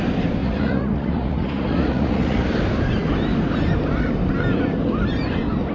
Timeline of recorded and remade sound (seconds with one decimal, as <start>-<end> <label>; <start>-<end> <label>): 0.0-0.4 recorded; 0.4-2.5 remade; 2.5-5.7 recorded